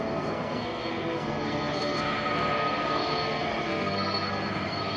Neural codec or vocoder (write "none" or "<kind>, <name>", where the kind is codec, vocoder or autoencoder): codec, SNAC